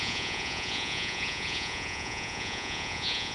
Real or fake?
fake